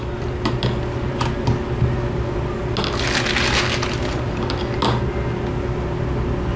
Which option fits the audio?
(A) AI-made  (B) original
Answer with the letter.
B